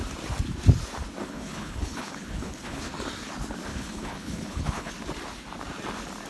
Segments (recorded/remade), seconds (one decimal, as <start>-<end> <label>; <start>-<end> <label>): 0.0-1.2 recorded; 1.2-2.9 remade; 2.9-3.7 recorded; 3.7-4.9 remade; 4.9-6.3 recorded